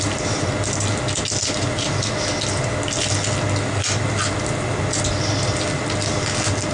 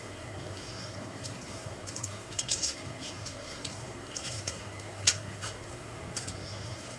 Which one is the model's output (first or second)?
second